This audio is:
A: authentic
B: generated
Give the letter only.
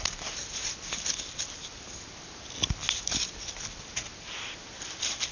A